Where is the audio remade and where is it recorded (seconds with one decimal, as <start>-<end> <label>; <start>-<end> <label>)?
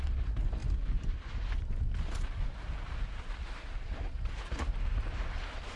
0.0-5.8 recorded